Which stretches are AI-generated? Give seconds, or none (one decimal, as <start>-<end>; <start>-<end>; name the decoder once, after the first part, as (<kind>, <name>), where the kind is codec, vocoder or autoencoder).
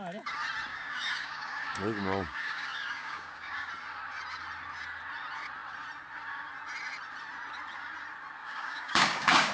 0.7-3.7 (codec, DAC); 8.4-9.5